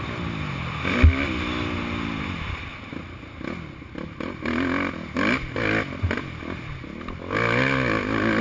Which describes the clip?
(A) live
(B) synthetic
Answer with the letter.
A